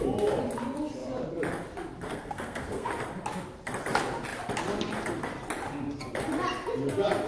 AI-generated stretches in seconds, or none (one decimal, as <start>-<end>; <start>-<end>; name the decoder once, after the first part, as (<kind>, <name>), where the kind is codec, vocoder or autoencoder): 2.1-2.9 (codec, SNAC)